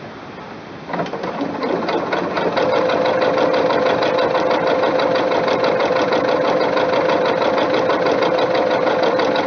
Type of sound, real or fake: real